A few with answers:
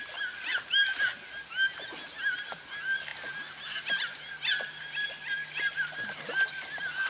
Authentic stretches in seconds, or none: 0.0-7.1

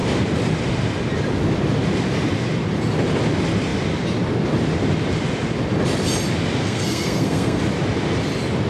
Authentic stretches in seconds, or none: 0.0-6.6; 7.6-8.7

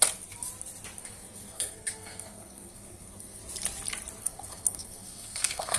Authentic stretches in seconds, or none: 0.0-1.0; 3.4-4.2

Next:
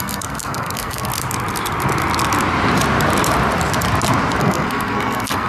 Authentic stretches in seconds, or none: 1.1-4.4

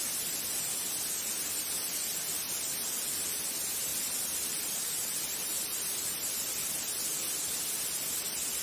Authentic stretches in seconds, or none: 0.0-8.6

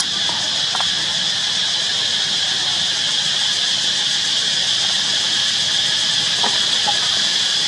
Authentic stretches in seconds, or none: 0.0-7.7